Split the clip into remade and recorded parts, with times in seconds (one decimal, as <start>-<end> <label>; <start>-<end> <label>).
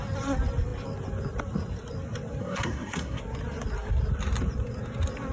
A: 0.0-2.4 recorded; 2.4-3.2 remade; 3.2-5.3 recorded